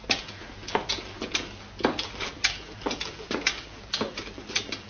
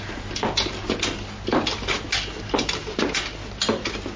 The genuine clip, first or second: second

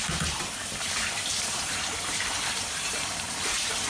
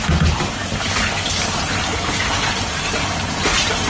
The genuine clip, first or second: second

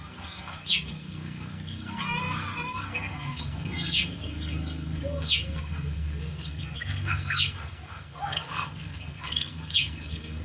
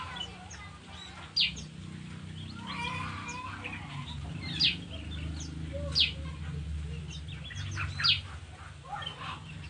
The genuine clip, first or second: second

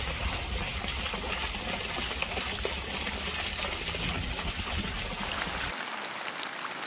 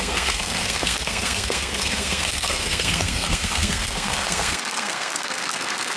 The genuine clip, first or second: first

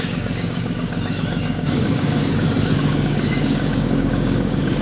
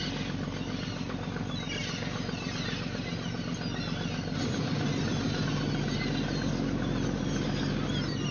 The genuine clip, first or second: second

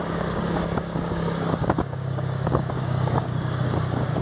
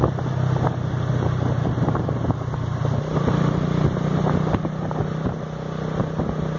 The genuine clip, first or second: second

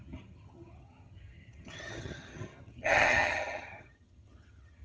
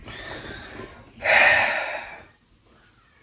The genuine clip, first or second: second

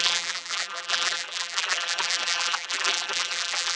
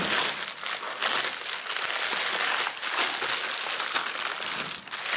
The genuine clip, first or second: second